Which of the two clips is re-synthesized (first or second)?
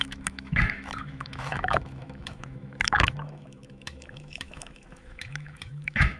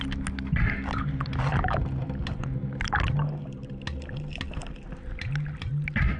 first